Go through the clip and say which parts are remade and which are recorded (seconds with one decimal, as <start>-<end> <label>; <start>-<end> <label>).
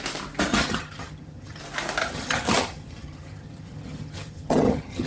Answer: 0.0-0.5 recorded; 0.5-1.6 remade; 1.6-2.0 recorded; 2.0-5.1 remade